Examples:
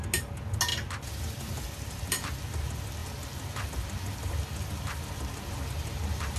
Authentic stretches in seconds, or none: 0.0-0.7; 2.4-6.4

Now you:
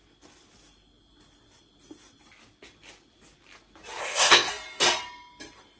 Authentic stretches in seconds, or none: 0.0-4.0; 4.5-5.8